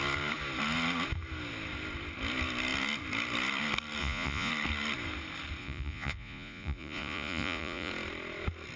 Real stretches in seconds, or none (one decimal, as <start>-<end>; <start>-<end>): 0.0-4.0; 4.5-5.6; 7.9-8.8